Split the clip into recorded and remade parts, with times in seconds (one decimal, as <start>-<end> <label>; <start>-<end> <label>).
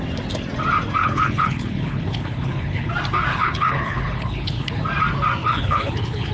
0.0-1.0 recorded; 1.0-2.9 remade; 2.9-3.3 recorded; 3.3-4.8 remade; 4.8-5.4 recorded; 5.4-6.3 remade